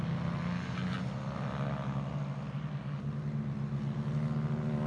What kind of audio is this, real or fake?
real